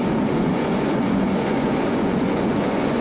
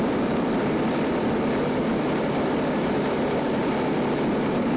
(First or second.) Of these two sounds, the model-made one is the first